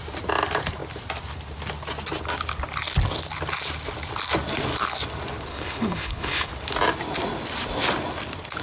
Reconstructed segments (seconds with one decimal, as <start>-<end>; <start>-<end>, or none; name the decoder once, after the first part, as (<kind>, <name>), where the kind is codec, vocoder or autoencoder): 5.5-6.5 (codec, HILCodec)